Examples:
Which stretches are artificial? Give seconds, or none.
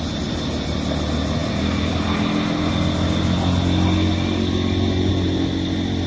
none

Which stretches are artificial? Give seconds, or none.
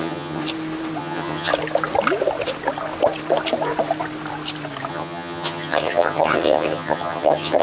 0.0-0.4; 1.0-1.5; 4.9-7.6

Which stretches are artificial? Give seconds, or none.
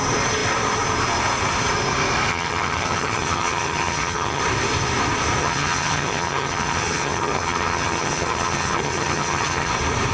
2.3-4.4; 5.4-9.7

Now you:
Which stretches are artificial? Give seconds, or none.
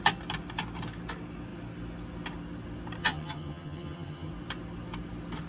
3.0-4.3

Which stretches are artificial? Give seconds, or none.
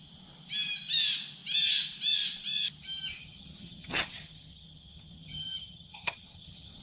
3.2-6.8